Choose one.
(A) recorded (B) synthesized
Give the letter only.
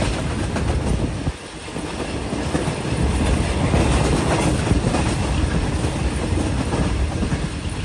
A